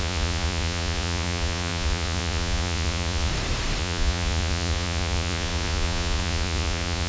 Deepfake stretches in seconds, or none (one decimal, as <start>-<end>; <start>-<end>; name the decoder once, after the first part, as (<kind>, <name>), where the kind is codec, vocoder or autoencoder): 0.0-3.3 (vocoder, Vocos); 3.8-7.1